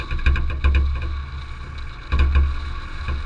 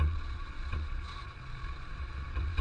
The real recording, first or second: first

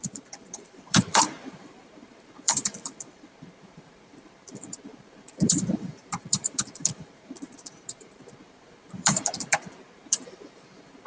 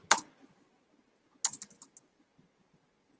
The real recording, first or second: second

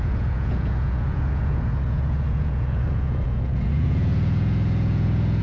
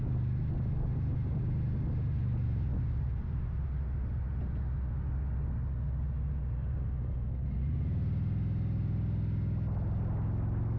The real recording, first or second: second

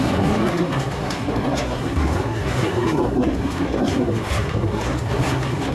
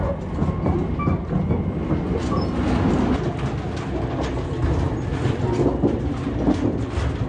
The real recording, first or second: second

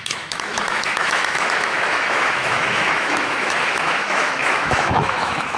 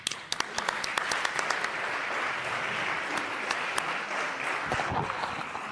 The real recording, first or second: second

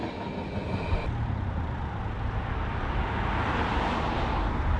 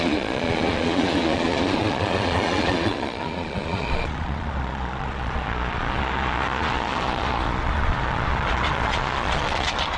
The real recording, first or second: first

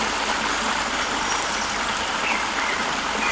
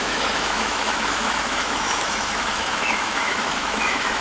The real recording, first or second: first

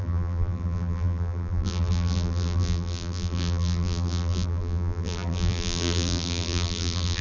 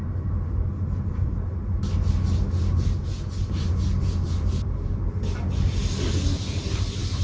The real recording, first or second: second